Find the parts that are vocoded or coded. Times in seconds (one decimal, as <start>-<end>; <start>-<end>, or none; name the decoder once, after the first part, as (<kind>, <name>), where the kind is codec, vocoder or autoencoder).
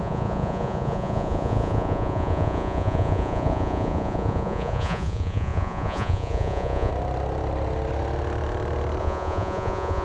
0.0-6.9 (vocoder, Vocos); 9.0-10.0